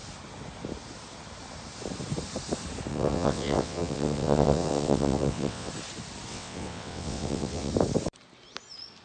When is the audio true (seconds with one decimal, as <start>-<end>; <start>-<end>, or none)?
0.0-2.9; 5.7-6.3; 7.7-9.0